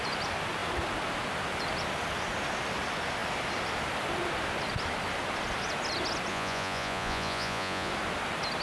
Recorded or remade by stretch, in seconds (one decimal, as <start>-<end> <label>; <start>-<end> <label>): 0.0-6.3 recorded; 6.3-7.9 remade; 7.9-8.6 recorded